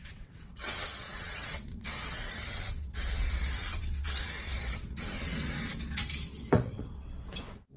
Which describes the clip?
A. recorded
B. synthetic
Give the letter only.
B